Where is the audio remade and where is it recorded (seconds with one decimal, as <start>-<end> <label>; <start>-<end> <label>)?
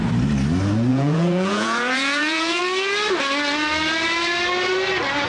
0.0-0.9 recorded; 0.9-2.6 remade; 2.6-5.3 recorded